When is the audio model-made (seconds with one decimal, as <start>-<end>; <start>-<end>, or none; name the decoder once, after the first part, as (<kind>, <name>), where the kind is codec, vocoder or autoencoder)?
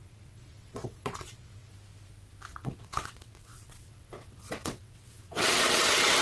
0.0-1.7 (vocoder, WaveNeXt); 2.5-6.2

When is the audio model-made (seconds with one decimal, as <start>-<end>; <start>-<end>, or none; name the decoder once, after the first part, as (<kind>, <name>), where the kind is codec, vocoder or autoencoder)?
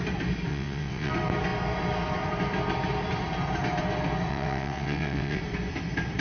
0.5-1.1 (vocoder, WaveNeXt); 4.3-5.4